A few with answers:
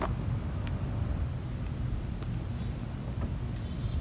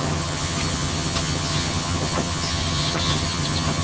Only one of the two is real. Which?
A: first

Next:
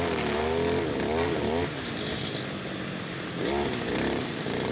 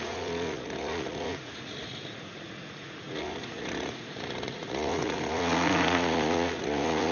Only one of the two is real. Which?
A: first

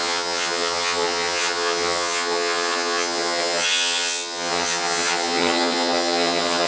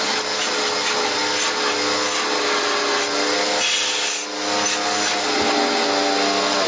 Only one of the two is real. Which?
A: second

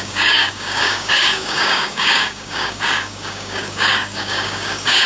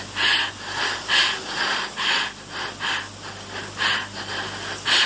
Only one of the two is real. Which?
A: second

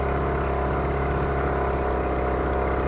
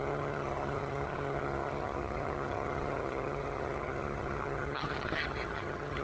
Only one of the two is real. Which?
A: first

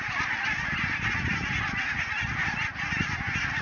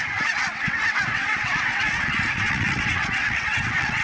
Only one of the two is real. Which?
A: first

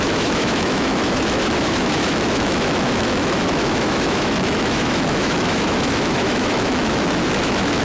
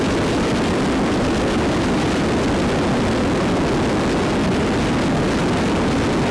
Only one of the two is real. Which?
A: second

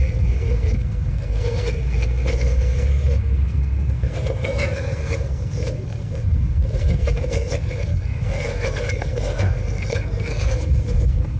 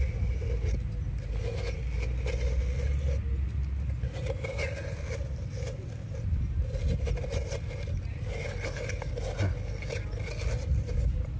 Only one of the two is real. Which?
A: second